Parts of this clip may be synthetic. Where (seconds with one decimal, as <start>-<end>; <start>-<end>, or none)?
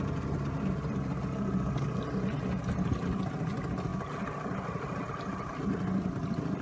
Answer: none